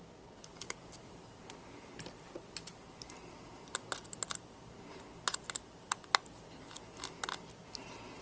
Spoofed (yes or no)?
no